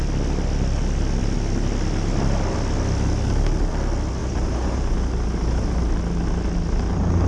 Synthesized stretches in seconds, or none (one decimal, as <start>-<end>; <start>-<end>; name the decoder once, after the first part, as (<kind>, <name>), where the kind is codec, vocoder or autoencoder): 4.2-5.8 (vocoder, BigVGAN v2)